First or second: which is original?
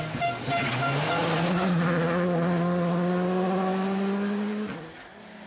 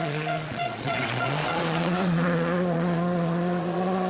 first